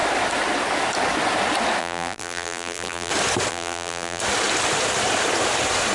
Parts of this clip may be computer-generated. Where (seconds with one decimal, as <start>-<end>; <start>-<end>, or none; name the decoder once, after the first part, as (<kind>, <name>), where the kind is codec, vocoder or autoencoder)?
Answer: 1.8-3.1 (vocoder, BigVGAN v2); 3.5-4.2